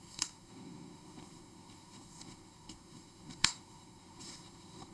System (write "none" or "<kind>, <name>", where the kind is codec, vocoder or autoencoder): codec, SNAC